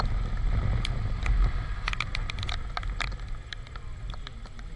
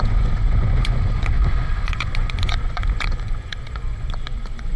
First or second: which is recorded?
first